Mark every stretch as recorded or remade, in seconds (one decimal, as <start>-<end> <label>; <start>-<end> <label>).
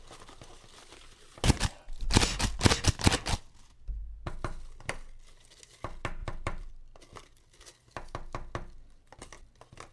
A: 0.0-6.2 recorded; 6.2-6.7 remade; 6.7-9.9 recorded